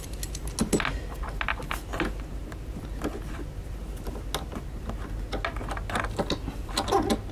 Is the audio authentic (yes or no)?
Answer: yes